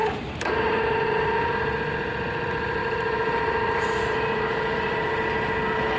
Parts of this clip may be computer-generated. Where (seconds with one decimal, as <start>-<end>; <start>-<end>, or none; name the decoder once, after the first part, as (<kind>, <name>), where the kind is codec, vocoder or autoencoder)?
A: 0.0-1.5 (vocoder, BigVGAN v2); 2.8-5.3